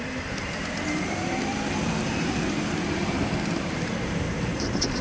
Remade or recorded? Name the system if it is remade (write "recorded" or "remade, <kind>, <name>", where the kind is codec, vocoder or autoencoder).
remade, vocoder, BigVGAN v2